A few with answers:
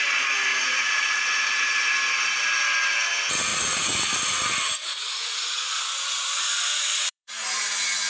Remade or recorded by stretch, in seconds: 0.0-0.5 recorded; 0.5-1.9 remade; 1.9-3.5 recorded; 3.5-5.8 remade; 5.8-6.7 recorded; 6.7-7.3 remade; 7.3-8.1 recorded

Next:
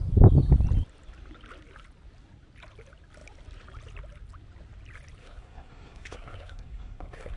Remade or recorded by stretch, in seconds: 0.0-5.2 recorded; 5.2-7.4 remade

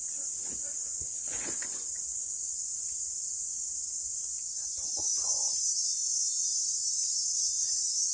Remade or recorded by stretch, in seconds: 0.0-8.1 remade

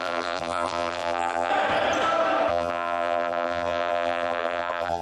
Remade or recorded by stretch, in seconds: 0.0-1.5 remade; 1.5-2.5 recorded; 2.5-5.0 remade